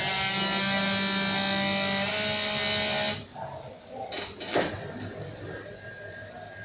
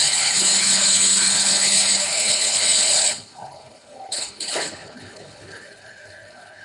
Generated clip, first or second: second